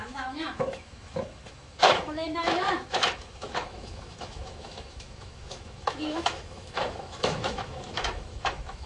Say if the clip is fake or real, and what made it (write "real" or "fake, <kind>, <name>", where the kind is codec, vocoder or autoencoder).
fake, autoencoder, DAC-VAE